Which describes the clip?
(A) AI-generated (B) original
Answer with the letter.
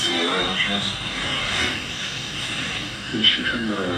A